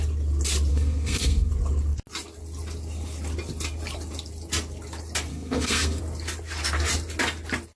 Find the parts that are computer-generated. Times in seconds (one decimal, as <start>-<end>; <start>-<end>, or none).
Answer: 0.7-1.5; 5.3-6.0